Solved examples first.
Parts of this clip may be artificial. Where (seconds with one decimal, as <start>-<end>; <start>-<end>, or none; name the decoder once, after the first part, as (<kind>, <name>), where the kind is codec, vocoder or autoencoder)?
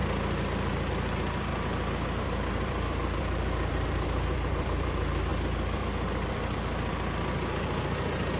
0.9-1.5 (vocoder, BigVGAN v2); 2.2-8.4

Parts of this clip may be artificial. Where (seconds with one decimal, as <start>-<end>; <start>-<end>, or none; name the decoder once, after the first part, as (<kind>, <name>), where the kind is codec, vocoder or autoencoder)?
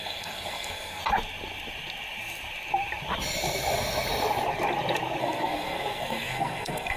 0.0-1.0 (codec, SNAC); 5.2-7.0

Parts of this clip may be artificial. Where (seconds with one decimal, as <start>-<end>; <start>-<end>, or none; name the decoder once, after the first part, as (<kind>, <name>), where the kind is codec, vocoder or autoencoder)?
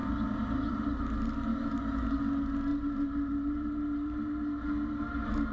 0.0-1.0 (vocoder, BigVGAN v2); 1.5-2.2; 2.7-5.1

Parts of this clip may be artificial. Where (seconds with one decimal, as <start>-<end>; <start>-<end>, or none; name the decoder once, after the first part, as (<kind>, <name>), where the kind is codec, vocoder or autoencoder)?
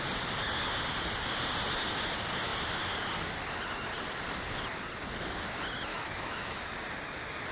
5.9-6.6 (autoencoder, DAC-VAE)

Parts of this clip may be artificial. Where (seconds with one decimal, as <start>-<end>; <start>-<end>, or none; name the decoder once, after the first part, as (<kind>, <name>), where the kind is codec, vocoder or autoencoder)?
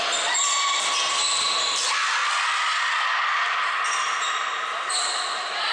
none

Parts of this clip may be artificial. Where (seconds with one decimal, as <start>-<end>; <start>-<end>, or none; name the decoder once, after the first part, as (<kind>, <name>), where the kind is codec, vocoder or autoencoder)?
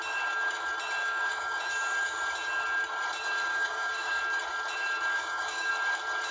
1.0-1.6 (codec, DAC); 3.5-4.2; 5.1-5.7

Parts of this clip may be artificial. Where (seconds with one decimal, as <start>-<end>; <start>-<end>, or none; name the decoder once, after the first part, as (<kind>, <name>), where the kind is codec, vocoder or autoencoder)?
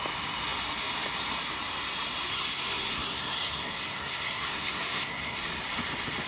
2.3-5.6 (codec, SNAC)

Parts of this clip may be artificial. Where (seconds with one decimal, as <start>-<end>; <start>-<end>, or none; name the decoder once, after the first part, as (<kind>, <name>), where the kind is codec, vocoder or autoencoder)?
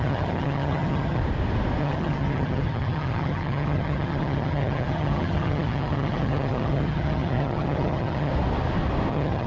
0.0-1.2 (vocoder, HiFi-GAN); 1.8-8.3; 9.1-9.5